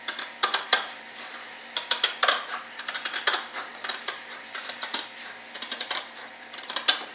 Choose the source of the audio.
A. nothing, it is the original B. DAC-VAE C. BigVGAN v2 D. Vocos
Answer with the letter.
C